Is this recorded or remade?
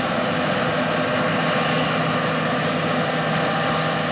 recorded